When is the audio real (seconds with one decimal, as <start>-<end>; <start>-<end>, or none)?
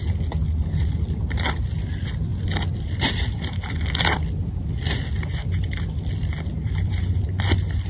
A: 0.0-7.9